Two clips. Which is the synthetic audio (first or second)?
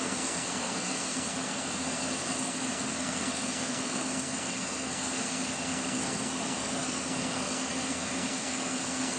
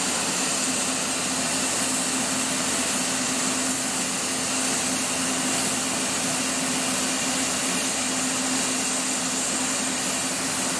first